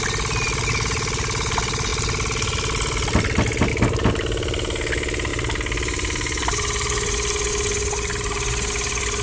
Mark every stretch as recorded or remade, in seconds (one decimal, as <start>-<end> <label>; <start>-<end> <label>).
0.0-9.2 recorded